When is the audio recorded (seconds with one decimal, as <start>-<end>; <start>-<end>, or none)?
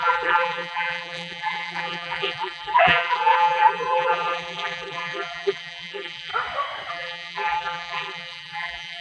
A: 6.3-6.9